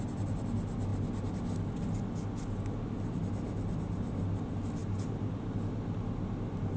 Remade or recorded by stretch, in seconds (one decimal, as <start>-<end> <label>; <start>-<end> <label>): 0.0-6.8 recorded